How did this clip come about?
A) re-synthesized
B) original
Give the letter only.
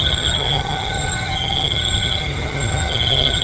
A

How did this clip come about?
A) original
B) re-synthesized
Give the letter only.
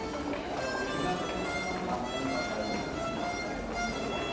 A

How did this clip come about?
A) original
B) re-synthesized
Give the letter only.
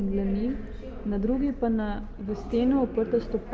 A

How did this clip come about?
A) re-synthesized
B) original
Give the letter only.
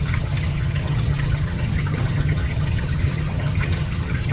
A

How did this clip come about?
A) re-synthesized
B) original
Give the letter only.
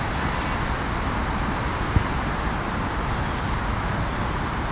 B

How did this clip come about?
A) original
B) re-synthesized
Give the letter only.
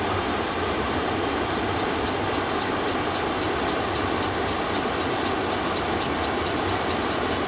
A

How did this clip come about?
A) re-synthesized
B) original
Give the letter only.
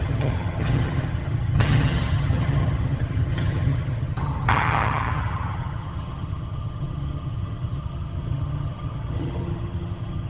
A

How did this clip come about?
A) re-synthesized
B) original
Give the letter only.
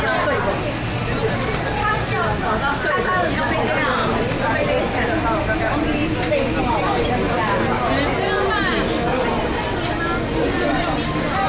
B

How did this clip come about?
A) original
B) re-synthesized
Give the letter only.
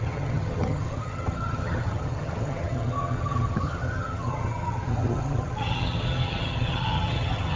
B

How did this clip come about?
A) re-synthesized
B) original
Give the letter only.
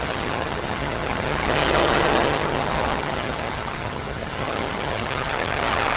A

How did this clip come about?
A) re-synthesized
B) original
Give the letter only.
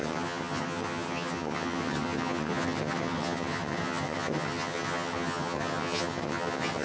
A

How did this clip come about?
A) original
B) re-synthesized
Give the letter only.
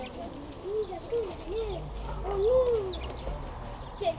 A